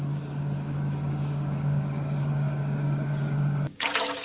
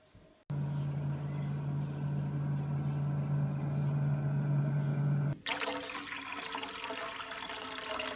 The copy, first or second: first